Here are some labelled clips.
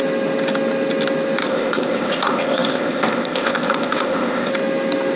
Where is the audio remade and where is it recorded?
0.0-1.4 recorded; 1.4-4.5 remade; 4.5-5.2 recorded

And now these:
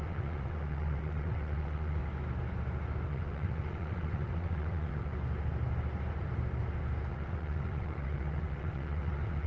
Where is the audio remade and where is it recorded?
0.0-2.0 remade; 2.0-3.0 recorded; 3.0-5.1 remade; 5.1-7.1 recorded; 7.1-9.5 remade

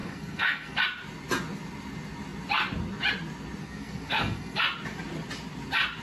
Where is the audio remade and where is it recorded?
0.0-0.8 remade; 0.8-3.6 recorded; 3.6-4.6 remade; 4.6-6.0 recorded

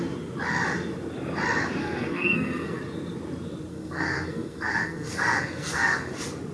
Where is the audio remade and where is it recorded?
0.0-1.8 recorded; 1.8-2.8 remade; 2.8-3.7 recorded; 3.7-6.1 remade; 6.1-6.5 recorded

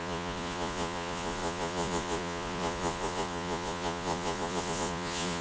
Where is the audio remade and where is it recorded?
0.0-5.4 remade